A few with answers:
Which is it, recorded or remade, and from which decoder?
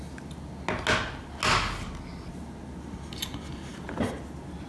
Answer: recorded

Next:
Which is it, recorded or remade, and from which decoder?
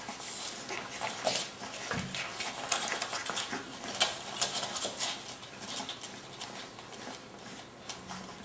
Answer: recorded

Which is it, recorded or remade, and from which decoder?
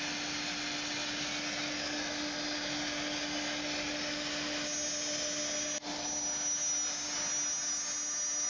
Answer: recorded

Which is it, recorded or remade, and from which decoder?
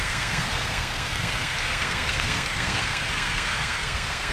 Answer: remade, codec, SNAC